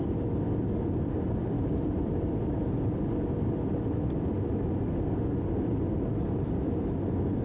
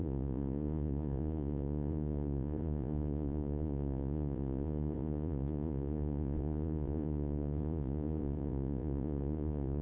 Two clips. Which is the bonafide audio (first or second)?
first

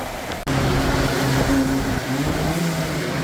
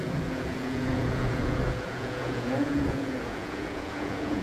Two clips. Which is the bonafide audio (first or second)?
first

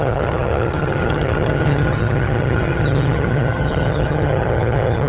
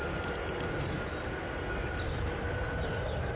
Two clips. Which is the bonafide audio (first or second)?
second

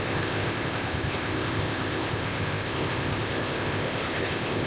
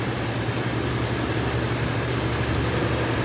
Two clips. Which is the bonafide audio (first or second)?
second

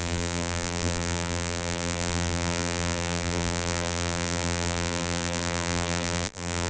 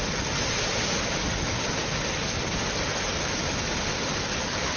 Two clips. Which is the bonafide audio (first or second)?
second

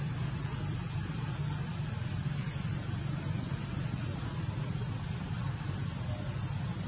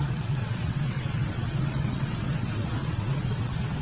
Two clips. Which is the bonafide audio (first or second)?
first